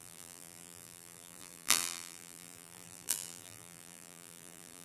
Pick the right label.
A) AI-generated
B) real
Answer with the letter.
A